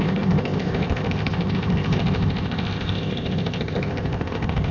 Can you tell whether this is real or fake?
fake